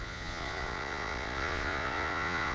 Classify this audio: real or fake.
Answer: fake